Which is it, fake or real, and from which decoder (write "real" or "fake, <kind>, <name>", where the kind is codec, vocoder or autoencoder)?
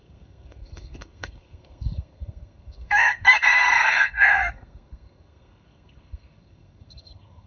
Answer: fake, codec, SNAC